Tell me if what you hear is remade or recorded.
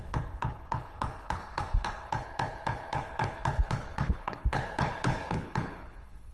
remade